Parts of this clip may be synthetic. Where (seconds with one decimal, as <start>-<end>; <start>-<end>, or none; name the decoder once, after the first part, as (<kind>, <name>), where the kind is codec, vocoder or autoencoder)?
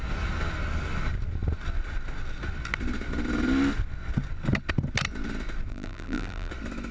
5.7-6.5 (vocoder, BigVGAN v2)